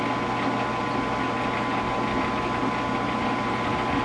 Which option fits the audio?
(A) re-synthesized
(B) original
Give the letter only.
B